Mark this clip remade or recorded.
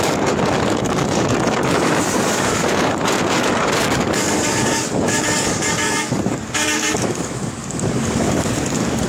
remade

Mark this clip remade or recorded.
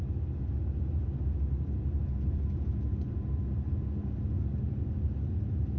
recorded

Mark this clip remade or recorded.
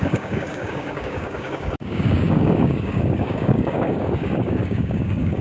remade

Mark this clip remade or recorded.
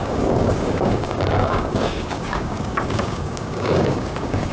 remade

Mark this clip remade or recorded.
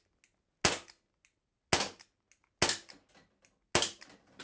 recorded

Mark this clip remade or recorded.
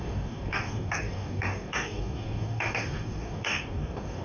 remade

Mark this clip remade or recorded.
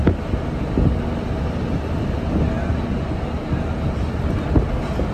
recorded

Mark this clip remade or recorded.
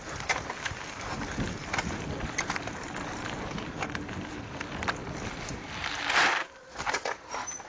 recorded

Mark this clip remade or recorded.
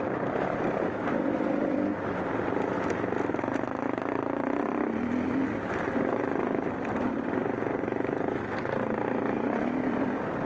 recorded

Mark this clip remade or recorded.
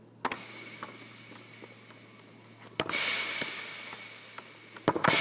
recorded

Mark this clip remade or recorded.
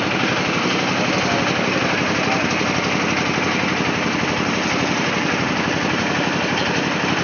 recorded